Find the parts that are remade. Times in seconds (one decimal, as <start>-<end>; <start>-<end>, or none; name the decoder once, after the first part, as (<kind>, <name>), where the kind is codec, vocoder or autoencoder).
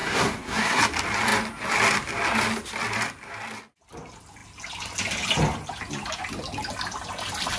0.0-0.8 (codec, SNAC)